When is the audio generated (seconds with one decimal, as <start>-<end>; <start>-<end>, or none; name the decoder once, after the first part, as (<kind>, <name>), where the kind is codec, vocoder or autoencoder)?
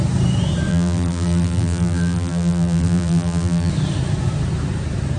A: 0.7-3.7 (vocoder, BigVGAN v2)